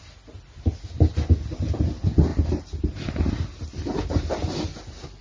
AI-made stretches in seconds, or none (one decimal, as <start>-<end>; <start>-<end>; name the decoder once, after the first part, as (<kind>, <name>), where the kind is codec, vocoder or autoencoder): none

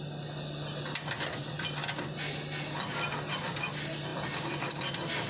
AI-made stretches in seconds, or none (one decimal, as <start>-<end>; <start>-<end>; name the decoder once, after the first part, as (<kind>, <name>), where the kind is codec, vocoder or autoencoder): none